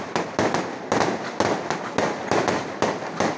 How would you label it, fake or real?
real